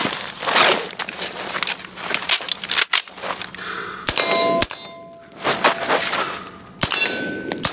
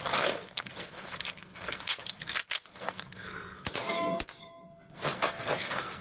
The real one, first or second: first